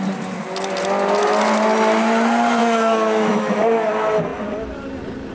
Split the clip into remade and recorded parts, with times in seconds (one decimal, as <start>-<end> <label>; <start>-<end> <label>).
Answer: 0.0-2.6 recorded; 2.6-3.9 remade; 3.9-5.3 recorded